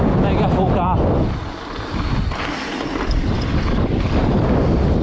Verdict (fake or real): real